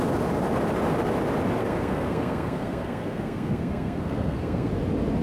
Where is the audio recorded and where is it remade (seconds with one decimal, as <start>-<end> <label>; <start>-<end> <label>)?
0.0-1.6 recorded; 1.6-4.7 remade; 4.7-5.2 recorded

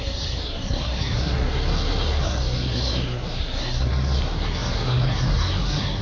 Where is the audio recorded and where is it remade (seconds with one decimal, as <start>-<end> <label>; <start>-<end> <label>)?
0.0-6.0 remade